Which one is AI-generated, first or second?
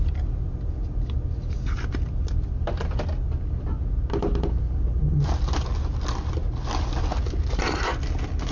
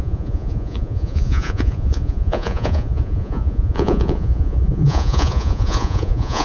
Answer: second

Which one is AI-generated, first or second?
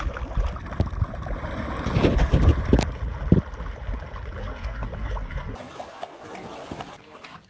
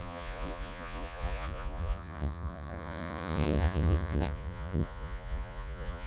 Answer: second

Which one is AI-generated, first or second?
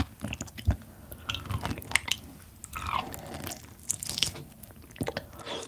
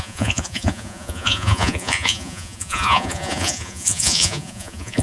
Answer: second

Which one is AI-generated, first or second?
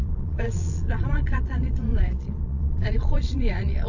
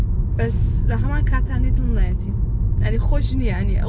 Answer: first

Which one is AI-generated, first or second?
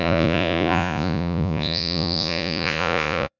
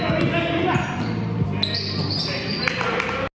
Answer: first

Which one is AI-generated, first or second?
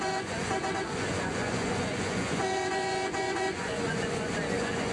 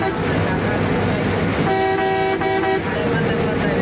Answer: first